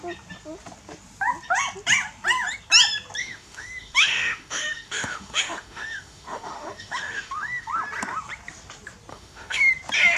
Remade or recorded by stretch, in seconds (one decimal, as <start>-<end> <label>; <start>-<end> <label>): 0.0-3.2 recorded; 3.2-7.7 remade; 7.7-9.1 recorded; 9.1-9.7 remade; 9.7-10.2 recorded